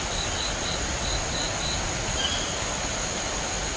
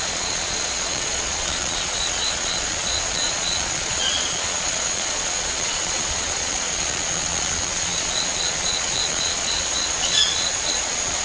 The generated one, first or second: second